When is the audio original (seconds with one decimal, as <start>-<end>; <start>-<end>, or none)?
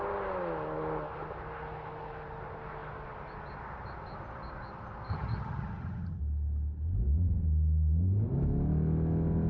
0.0-5.1; 6.2-9.5